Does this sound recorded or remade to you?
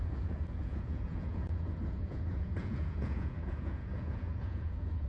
remade